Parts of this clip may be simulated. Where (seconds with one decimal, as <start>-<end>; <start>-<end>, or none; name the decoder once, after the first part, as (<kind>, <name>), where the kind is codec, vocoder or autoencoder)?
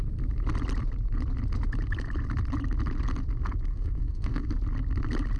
3.7-4.5 (codec, SNAC)